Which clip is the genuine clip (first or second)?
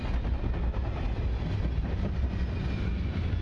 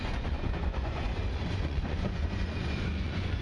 first